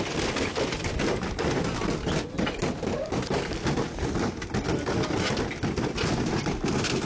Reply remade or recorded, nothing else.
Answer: recorded